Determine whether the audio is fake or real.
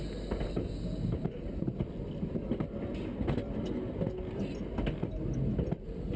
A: real